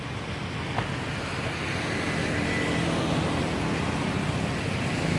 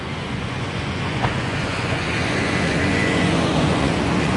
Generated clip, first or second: second